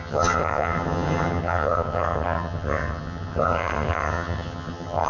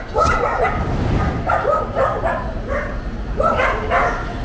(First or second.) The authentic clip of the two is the second